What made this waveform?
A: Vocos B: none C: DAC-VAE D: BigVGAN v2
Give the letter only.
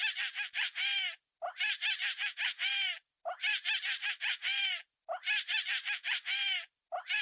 D